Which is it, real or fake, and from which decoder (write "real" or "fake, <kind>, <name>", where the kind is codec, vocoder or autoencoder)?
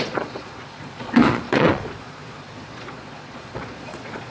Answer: fake, vocoder, Vocos